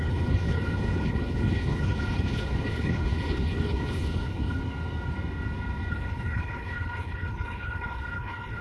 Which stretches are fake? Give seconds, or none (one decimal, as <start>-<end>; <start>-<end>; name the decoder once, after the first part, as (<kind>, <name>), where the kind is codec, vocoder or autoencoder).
0.0-4.6 (codec, HILCodec); 5.9-8.6